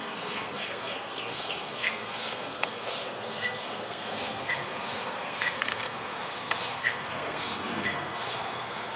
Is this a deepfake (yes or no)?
yes